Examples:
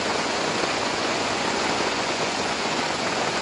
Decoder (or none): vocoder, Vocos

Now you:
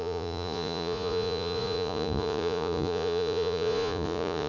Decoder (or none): vocoder, Vocos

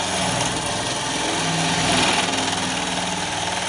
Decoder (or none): none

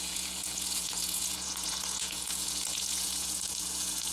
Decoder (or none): vocoder, Vocos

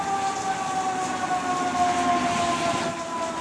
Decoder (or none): none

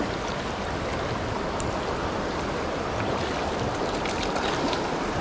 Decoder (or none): none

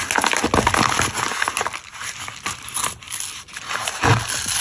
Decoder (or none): none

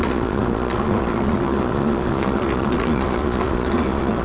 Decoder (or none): vocoder, Vocos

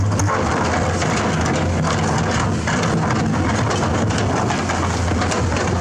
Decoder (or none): none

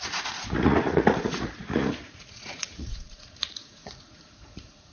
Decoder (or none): vocoder, Vocos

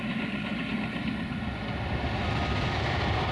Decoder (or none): none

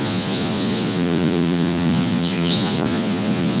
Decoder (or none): vocoder, Vocos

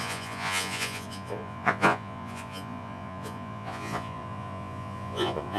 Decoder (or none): vocoder, Vocos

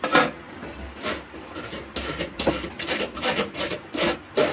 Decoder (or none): none